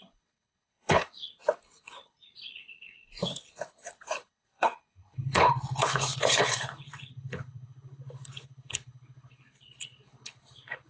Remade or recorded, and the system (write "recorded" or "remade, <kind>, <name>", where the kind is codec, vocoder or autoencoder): remade, codec, HILCodec